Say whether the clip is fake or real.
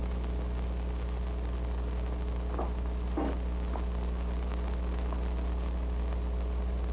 real